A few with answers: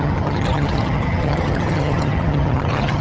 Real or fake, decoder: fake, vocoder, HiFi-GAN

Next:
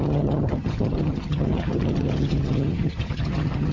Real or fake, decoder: fake, vocoder, HiFi-GAN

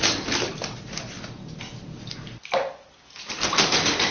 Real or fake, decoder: real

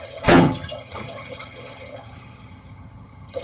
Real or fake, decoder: fake, vocoder, HiFi-GAN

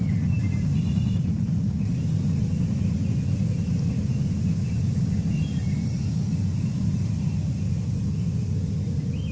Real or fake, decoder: real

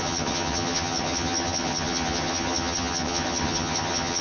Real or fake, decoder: fake, vocoder, HiFi-GAN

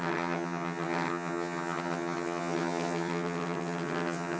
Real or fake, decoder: fake, vocoder, HiFi-GAN